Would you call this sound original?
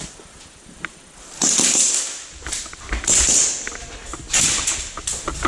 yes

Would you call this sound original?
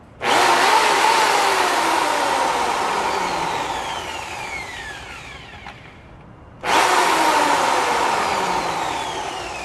no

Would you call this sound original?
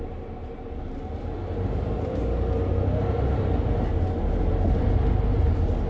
yes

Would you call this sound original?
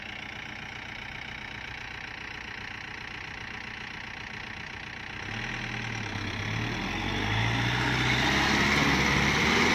yes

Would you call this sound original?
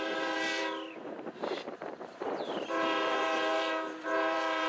no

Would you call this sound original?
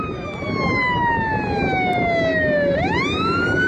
yes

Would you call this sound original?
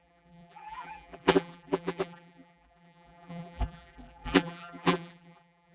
no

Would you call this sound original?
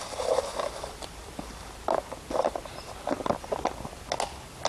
yes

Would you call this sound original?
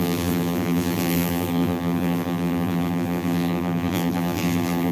no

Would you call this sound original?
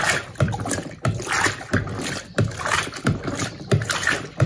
yes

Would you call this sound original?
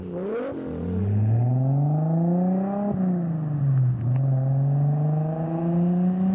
yes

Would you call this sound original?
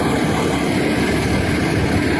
yes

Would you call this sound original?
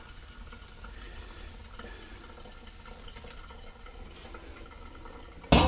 yes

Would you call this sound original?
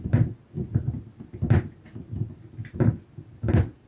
yes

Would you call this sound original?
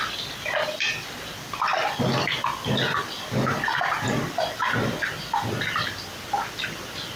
yes